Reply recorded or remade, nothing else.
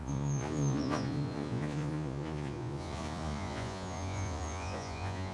remade